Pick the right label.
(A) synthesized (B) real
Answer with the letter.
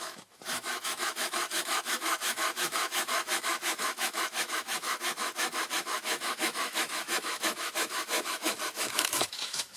A